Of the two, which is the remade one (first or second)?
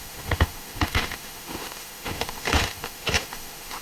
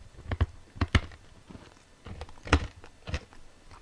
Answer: first